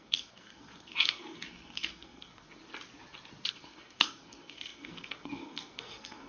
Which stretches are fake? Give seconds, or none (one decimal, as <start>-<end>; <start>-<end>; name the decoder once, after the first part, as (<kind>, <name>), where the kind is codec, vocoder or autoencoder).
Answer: 0.0-2.6 (codec, SNAC); 3.5-6.3